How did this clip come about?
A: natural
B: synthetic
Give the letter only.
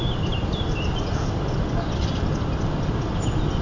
A